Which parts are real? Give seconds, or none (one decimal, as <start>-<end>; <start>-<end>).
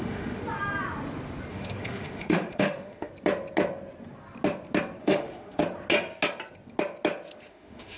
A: 0.4-1.5; 3.1-5.0; 5.6-7.5